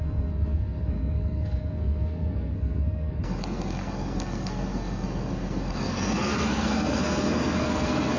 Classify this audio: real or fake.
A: fake